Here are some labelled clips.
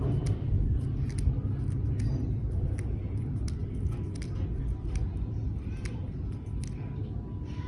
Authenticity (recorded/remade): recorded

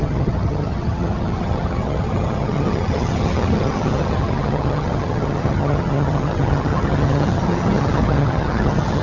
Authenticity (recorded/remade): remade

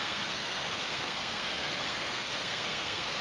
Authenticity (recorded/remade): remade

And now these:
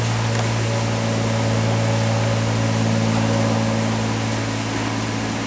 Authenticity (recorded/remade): recorded